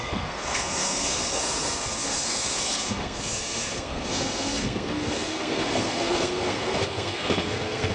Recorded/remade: remade